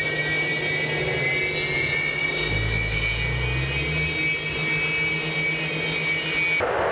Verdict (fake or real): real